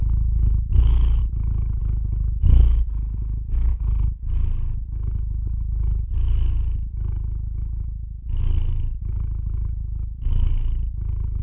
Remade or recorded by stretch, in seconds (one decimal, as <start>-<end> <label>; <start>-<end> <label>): 0.0-11.4 recorded